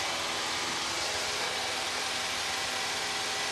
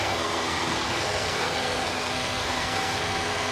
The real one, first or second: first